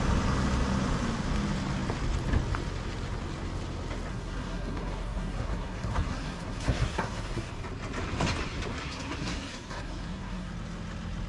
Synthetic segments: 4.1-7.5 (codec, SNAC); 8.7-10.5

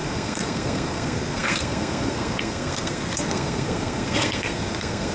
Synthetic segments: 0.0-5.1 (codec, SNAC)

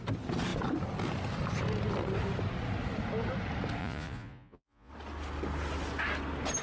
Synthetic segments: 3.8-4.9 (vocoder, Vocos)

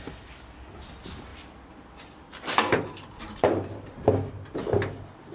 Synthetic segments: 2.7-3.9 (vocoder, BigVGAN v2)

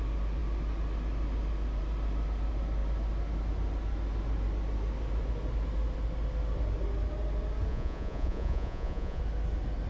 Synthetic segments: 7.7-9.2 (vocoder, Vocos)

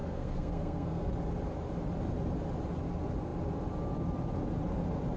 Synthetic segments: 0.0-1.1 (codec, SNAC)

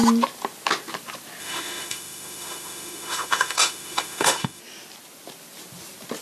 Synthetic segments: 1.4-4.6 (autoencoder, DAC-VAE)